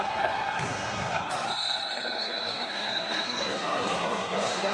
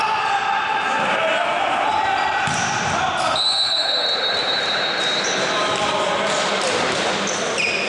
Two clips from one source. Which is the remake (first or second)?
first